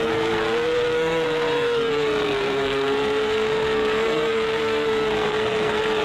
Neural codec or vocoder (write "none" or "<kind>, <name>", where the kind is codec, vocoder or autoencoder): codec, SNAC